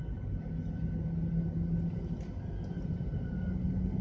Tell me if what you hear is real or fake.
real